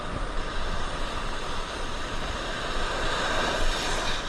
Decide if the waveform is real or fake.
real